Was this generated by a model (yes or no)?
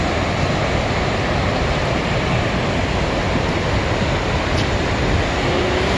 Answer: no